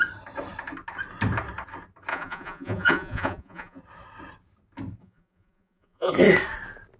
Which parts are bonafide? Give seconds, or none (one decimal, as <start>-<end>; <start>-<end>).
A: 0.0-2.1; 3.8-5.0; 6.1-7.0